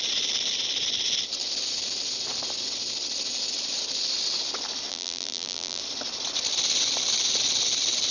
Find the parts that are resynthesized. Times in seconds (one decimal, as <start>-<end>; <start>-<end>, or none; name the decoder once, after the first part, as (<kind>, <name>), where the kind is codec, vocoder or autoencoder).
4.9-5.8 (vocoder, BigVGAN v2)